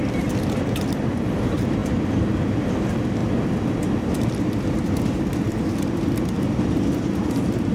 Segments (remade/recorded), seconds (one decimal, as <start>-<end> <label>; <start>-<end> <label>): 0.0-3.2 remade; 3.2-4.0 recorded; 4.0-7.7 remade